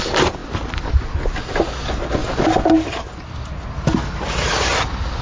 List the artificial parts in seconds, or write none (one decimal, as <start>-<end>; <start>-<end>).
none